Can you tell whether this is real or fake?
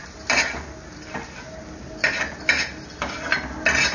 real